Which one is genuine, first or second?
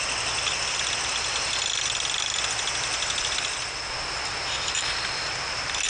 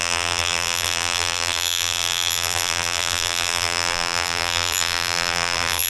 first